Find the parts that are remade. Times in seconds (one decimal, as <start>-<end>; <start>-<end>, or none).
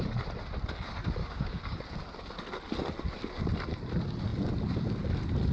1.2-1.8